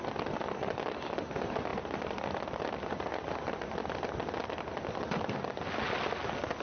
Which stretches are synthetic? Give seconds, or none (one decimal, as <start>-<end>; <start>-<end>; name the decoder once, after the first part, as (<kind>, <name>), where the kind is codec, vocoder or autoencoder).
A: 1.7-5.3 (vocoder, BigVGAN v2)